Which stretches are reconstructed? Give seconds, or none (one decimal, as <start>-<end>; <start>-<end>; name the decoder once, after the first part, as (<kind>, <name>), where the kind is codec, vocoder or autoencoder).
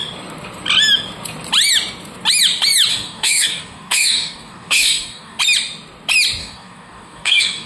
2.9-5.4 (codec, DAC); 6.4-7.7